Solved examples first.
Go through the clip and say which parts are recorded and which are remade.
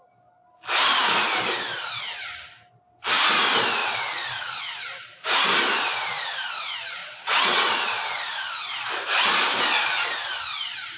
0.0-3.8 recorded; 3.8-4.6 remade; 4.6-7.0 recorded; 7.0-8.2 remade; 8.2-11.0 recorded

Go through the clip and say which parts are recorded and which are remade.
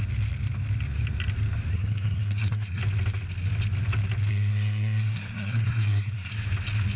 0.0-1.7 recorded; 1.7-2.8 remade; 2.8-4.3 recorded; 4.3-6.3 remade; 6.3-7.0 recorded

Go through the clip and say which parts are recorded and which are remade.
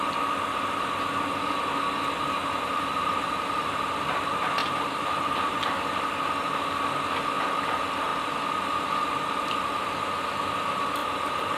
0.0-2.4 recorded; 2.4-4.0 remade; 4.0-4.6 recorded; 4.6-5.8 remade; 5.8-11.0 recorded; 11.0-11.6 remade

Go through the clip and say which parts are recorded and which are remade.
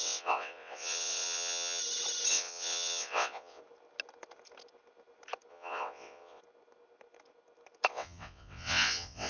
0.0-1.8 remade; 1.8-2.3 recorded; 2.3-3.6 remade; 3.6-5.5 recorded; 5.5-6.4 remade; 6.4-7.9 recorded; 7.9-9.3 remade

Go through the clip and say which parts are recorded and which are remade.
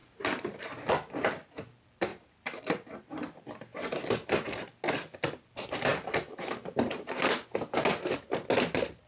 0.0-0.9 remade; 0.9-2.1 recorded; 2.1-3.1 remade; 3.1-5.9 recorded; 5.9-6.5 remade; 6.5-9.1 recorded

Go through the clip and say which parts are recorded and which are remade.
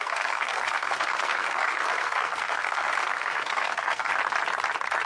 0.0-4.1 remade; 4.1-5.1 recorded